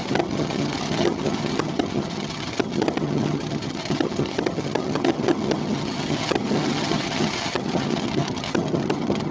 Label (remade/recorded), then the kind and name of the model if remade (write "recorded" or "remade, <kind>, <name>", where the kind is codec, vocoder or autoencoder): remade, vocoder, HiFi-GAN